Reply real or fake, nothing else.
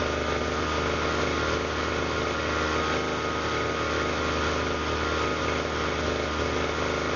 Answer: real